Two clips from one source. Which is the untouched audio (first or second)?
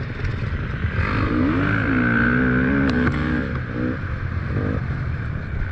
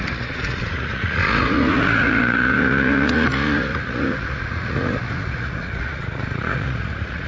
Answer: first